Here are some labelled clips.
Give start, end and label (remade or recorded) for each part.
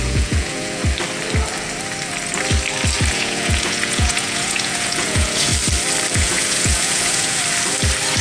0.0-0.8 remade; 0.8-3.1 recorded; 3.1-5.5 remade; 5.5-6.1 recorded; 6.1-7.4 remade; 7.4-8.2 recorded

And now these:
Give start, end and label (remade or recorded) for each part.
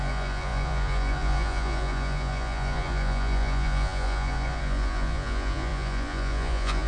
0.0-6.9 remade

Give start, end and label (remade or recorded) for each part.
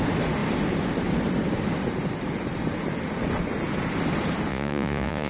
0.0-4.5 recorded; 4.5-5.3 remade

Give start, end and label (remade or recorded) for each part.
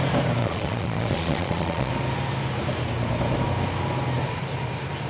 0.0-0.4 recorded; 0.4-1.9 remade; 1.9-5.1 recorded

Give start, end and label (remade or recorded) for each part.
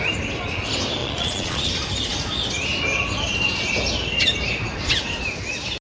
0.0-1.0 recorded; 1.0-1.7 remade; 1.7-5.8 recorded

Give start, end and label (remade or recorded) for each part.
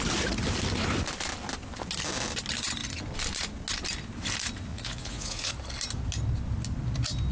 0.0-4.7 recorded; 4.7-5.5 remade; 5.5-7.3 recorded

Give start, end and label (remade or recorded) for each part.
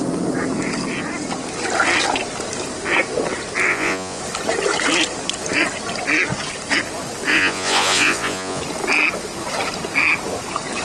0.0-3.7 recorded; 3.7-4.2 remade; 4.2-7.3 recorded; 7.3-8.6 remade; 8.6-10.8 recorded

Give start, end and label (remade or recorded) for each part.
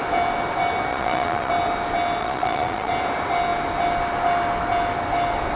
0.0-0.9 recorded; 0.9-1.5 remade; 1.5-2.2 recorded; 2.2-2.9 remade; 2.9-5.6 recorded